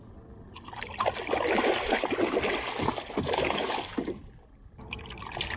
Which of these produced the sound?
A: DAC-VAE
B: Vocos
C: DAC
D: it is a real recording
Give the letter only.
D